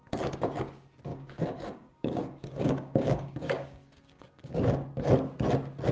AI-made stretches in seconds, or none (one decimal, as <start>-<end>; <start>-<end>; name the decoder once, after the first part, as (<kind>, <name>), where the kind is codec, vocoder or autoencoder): 1.1-4.6 (codec, DAC)